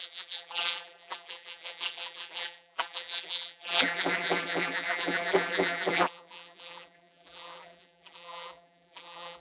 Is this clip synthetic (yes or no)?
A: yes